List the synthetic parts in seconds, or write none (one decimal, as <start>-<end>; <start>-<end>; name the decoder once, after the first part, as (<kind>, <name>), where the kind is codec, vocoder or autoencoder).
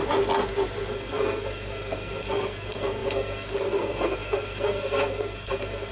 0.9-5.9 (codec, SNAC)